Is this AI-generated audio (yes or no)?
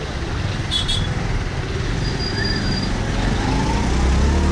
no